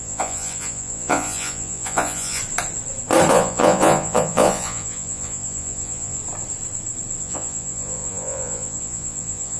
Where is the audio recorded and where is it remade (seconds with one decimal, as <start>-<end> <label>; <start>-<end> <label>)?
0.0-2.4 remade; 2.4-3.3 recorded; 3.3-6.2 remade; 6.2-7.2 recorded; 7.2-9.6 remade